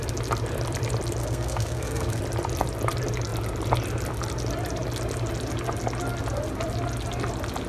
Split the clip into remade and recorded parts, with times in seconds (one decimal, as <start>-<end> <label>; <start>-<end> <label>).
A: 0.0-1.2 recorded; 1.2-2.2 remade; 2.2-7.7 recorded